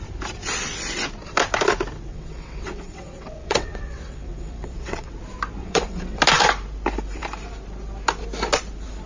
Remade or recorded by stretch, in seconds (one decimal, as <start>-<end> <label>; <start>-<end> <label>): 0.0-2.1 recorded; 2.1-5.1 remade; 5.1-5.6 recorded; 5.6-6.2 remade; 6.2-9.1 recorded

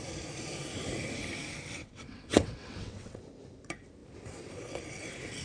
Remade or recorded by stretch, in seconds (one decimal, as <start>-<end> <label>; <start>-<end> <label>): 0.0-1.8 recorded; 1.8-3.2 remade; 3.2-5.4 recorded

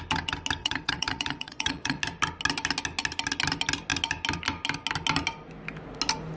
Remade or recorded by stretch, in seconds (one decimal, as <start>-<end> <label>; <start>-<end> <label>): 0.0-0.6 recorded; 0.6-2.0 remade; 2.0-6.4 recorded

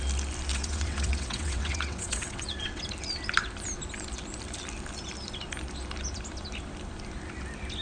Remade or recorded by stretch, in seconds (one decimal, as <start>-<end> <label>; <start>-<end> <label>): 0.0-0.5 recorded; 0.5-2.8 remade; 2.8-7.8 recorded

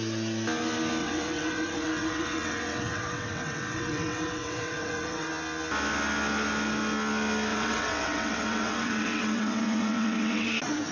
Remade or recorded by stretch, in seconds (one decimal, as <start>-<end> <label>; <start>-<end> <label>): 0.0-1.0 recorded; 1.0-5.3 remade; 5.3-7.5 recorded; 7.5-10.5 remade; 10.5-10.9 recorded

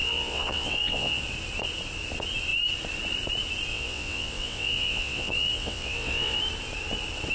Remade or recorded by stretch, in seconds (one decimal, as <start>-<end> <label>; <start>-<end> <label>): 0.0-1.2 remade; 1.2-3.7 recorded; 3.7-6.4 remade; 6.4-7.3 recorded

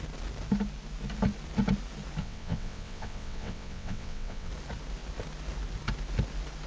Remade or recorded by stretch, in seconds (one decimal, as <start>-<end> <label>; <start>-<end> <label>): 0.0-2.2 recorded; 2.2-4.5 remade; 4.5-6.7 recorded

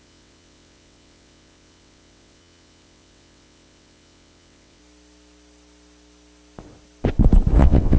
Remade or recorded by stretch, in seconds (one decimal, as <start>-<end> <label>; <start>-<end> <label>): 0.0-4.8 remade; 4.8-7.6 recorded; 7.6-8.0 remade